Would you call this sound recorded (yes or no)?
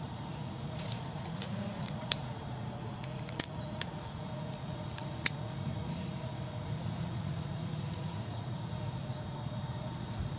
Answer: no